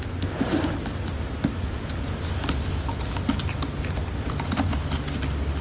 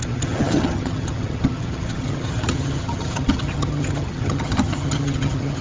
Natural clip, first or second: first